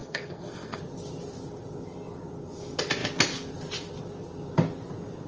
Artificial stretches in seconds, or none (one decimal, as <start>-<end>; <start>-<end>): 0.0-0.8